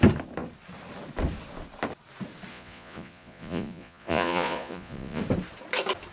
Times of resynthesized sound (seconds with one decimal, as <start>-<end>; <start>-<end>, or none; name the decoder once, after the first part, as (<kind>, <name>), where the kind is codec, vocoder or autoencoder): 2.5-5.2 (vocoder, Vocos)